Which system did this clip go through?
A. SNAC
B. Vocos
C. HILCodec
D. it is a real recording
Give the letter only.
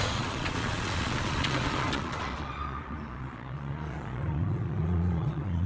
B